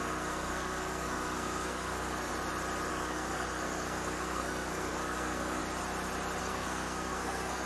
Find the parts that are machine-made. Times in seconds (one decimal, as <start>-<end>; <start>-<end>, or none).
0.0-2.3; 2.9-5.6; 6.4-7.7